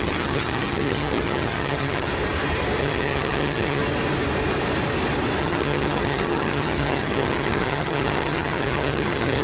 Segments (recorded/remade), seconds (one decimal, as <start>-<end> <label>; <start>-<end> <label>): 0.0-2.1 remade; 2.1-2.8 recorded; 2.8-3.8 remade; 3.8-5.4 recorded; 5.4-9.4 remade